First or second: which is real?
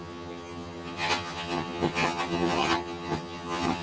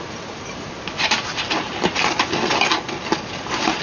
second